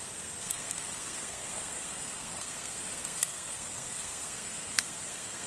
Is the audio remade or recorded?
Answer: remade